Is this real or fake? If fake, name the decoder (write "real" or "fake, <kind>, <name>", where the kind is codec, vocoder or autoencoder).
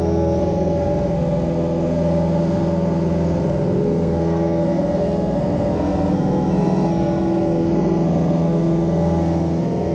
fake, codec, SNAC